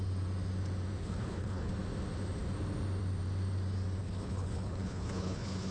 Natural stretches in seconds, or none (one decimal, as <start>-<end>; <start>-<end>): 0.0-1.0; 1.7-4.0